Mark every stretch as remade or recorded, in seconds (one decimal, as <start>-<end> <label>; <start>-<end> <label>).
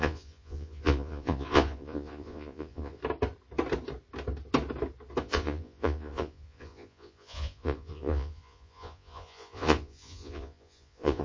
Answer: 0.0-3.0 remade; 3.0-5.2 recorded; 5.2-11.2 remade